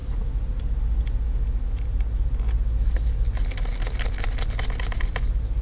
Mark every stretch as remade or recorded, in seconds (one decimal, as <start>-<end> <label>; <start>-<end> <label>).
0.0-5.6 recorded